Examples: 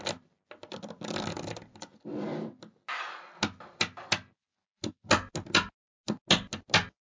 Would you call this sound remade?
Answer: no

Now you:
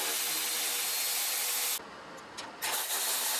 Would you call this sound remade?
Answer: no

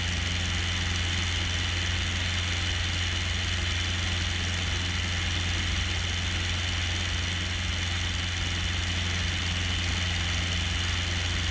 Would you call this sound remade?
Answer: no